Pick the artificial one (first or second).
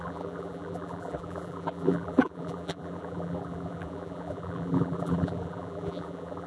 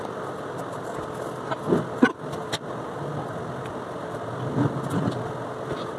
first